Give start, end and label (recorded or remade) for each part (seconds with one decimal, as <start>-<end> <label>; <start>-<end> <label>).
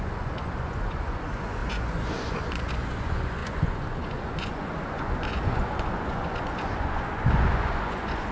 0.0-8.3 remade